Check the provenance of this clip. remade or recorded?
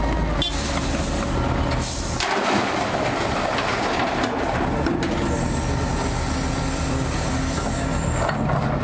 recorded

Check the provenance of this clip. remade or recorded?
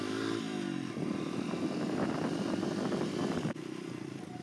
remade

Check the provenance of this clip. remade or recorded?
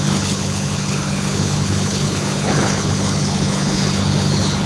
remade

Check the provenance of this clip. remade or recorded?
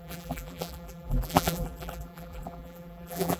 remade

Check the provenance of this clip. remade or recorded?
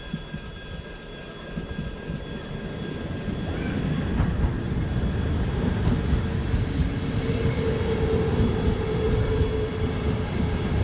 recorded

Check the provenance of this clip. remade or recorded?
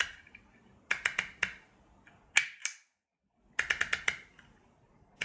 recorded